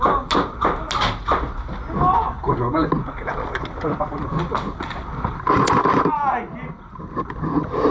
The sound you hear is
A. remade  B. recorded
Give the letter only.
B